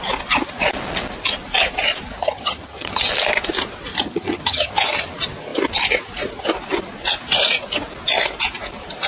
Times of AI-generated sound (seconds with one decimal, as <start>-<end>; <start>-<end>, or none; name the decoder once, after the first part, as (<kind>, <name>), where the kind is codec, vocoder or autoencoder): 2.2-3.1 (vocoder, HiFi-GAN); 3.9-4.7